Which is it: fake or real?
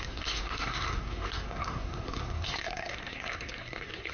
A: fake